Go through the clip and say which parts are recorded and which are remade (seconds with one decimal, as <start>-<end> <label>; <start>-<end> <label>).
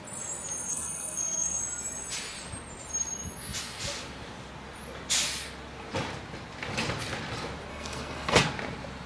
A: 0.0-0.7 recorded; 0.7-1.6 remade; 1.6-7.7 recorded; 7.7-8.4 remade; 8.4-9.1 recorded